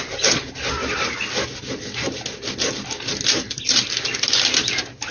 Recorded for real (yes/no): yes